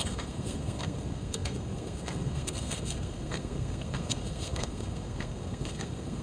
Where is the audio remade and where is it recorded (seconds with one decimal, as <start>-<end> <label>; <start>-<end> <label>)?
0.0-6.2 remade